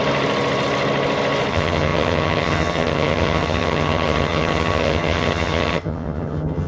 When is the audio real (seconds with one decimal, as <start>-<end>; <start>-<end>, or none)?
0.0-1.5